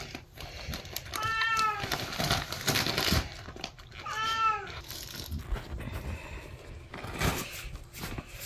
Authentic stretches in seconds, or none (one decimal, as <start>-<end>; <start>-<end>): 0.0-8.5